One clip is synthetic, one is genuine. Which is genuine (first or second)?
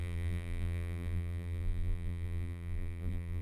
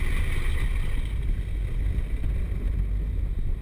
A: second